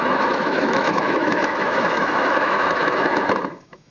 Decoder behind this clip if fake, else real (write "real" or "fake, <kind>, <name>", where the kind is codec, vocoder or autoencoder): fake, autoencoder, DAC-VAE